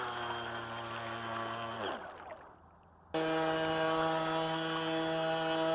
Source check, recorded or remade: recorded